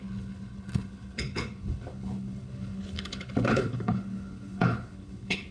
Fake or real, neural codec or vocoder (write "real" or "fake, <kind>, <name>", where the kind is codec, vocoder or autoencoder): fake, codec, HILCodec